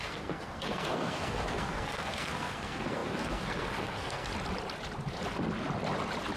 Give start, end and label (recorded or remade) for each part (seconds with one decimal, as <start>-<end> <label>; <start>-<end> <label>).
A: 0.0-4.3 remade; 4.3-6.4 recorded